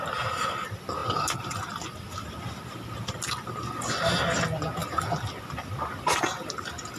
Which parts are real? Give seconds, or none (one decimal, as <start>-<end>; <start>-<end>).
0.0-1.0; 2.9-7.0